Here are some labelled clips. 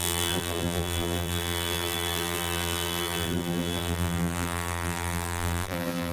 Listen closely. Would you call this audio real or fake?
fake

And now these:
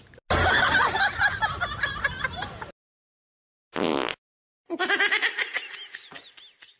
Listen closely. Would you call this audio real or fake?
real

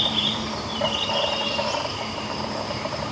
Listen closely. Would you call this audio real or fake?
fake